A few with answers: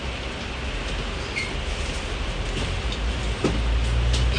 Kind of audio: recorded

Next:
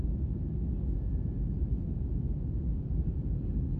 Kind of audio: recorded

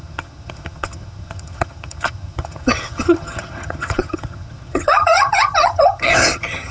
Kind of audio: remade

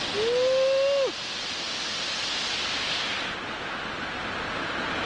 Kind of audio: recorded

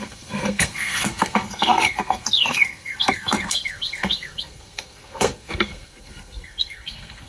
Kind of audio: remade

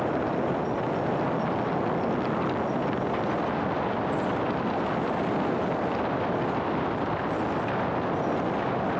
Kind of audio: recorded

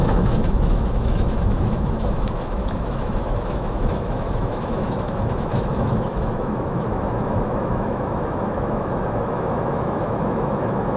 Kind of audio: remade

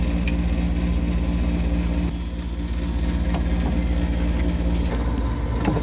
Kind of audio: recorded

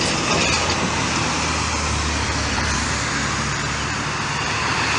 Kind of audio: remade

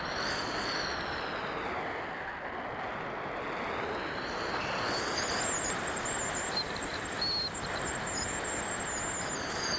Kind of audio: recorded